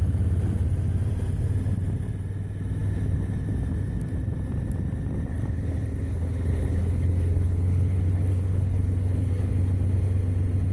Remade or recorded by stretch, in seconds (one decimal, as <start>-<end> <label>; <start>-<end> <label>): 0.0-5.3 recorded; 5.3-9.5 remade; 9.5-10.7 recorded